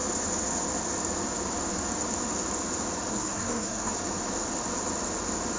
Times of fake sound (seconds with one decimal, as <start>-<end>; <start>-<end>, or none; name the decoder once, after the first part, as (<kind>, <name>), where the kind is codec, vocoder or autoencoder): 3.1-3.9 (codec, SNAC)